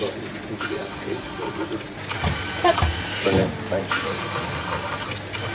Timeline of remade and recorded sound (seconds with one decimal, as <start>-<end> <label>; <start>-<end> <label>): 0.0-5.5 recorded